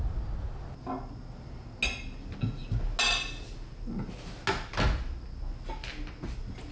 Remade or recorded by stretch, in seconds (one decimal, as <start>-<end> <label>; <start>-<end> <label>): 0.0-6.7 recorded